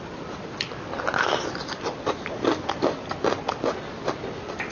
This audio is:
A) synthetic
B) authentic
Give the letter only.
B